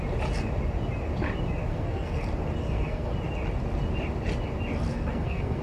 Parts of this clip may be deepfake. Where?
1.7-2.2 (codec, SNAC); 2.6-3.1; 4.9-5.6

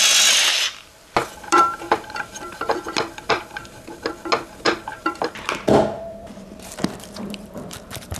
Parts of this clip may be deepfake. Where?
1.5-2.8 (vocoder, BigVGAN v2); 4.9-8.2

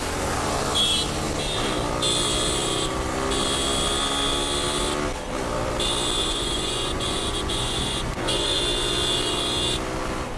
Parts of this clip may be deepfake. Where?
6.2-8.6 (vocoder, Vocos)

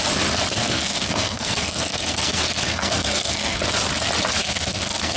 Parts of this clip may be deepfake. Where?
0.5-3.6 (codec, SNAC); 4.4-5.2

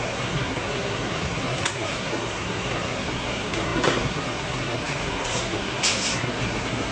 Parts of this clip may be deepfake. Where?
0.0-6.9 (codec, SNAC)